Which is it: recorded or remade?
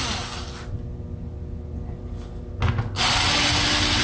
recorded